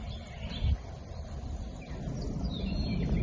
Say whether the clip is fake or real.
real